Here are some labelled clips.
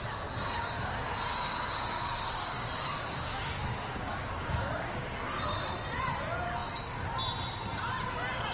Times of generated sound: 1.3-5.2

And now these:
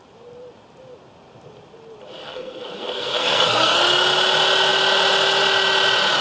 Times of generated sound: 2.2-3.8

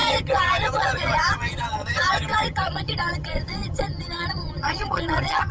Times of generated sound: 0.0-5.5

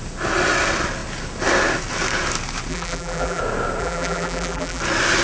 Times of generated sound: 2.7-3.4; 3.8-4.8

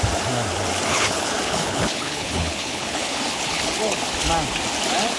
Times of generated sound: 0.9-4.0

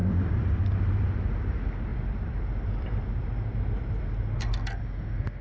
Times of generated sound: 0.0-1.1; 1.9-4.0

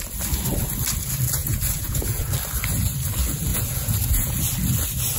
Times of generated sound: 1.4-2.3; 3.5-4.4